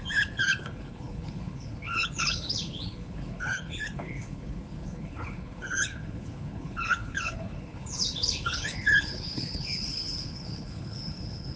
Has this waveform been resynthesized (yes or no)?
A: yes